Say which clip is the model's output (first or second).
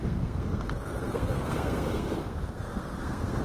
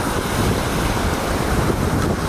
first